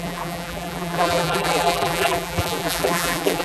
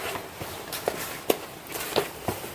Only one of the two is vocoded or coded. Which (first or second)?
first